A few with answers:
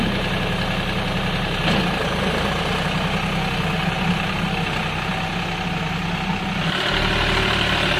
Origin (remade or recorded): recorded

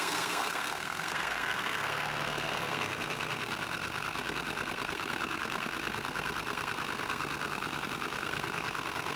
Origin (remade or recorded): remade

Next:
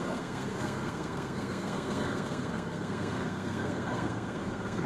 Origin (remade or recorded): remade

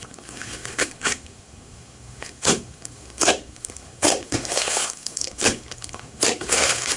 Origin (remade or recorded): remade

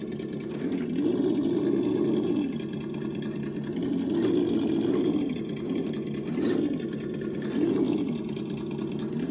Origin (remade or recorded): recorded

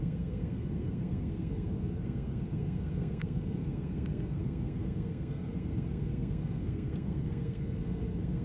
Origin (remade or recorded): remade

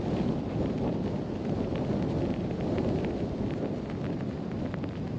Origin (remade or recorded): recorded